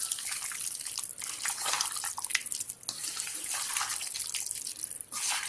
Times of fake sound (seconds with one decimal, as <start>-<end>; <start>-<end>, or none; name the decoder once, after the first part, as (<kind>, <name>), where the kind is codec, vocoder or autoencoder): none